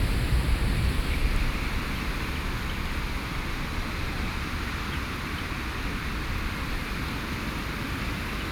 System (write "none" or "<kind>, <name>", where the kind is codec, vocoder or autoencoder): none